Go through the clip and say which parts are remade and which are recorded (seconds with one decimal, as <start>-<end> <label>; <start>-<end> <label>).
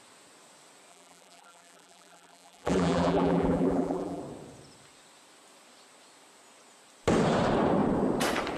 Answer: 0.0-0.9 recorded; 0.9-4.2 remade; 4.2-8.6 recorded